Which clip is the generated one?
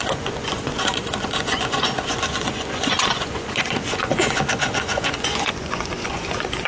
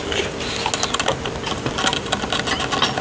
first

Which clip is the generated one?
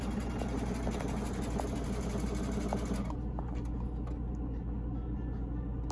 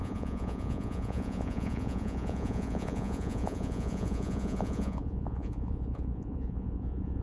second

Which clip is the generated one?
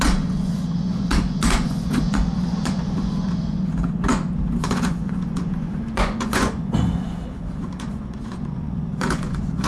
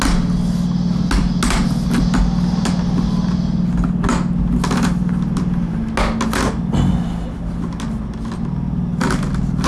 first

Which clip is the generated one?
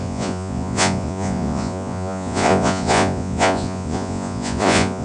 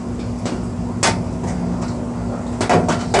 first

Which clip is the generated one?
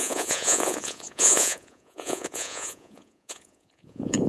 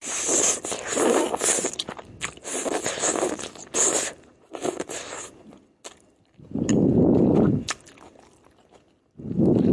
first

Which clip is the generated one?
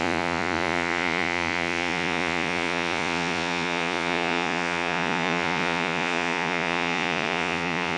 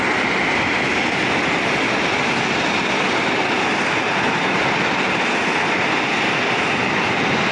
first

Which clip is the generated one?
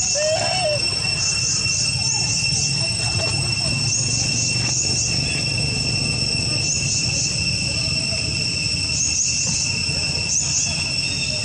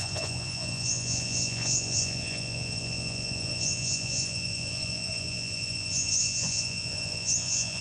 second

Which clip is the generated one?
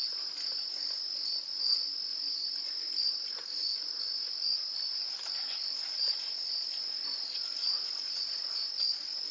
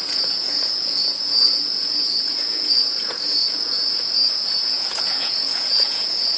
second